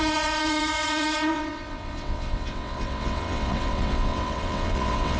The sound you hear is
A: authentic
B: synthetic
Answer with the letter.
B